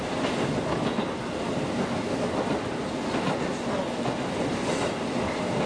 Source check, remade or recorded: recorded